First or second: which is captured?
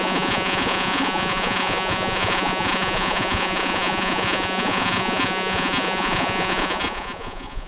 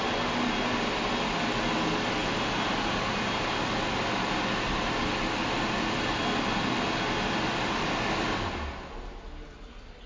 second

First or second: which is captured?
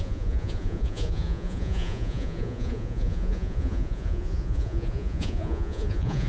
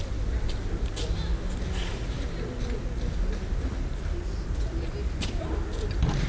second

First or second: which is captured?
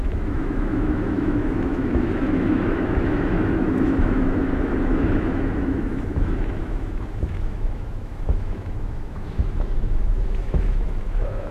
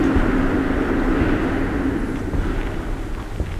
second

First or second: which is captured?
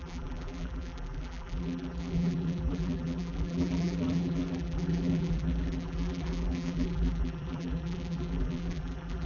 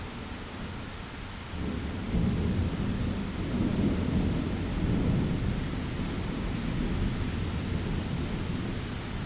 second